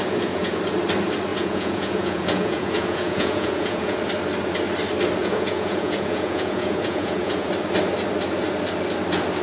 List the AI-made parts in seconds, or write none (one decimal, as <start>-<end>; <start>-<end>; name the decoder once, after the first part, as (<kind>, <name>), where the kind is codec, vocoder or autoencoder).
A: 0.0-0.6 (vocoder, Vocos); 1.3-4.0; 5.2-7.5